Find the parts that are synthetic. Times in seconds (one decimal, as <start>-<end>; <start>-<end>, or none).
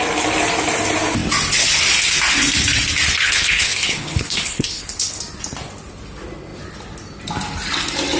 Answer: 3.2-5.2